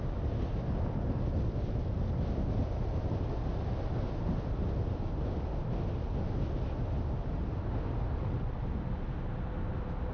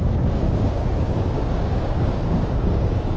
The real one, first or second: first